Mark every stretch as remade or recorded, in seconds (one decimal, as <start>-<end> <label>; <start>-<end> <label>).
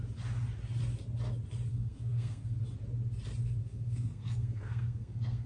0.0-1.7 recorded; 1.7-2.6 remade; 2.6-3.6 recorded; 3.6-5.5 remade